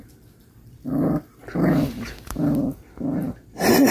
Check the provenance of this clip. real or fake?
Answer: real